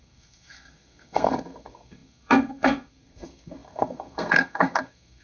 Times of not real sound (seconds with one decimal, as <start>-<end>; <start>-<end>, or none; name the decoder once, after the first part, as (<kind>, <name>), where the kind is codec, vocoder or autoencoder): 0.0-5.2 (codec, SNAC)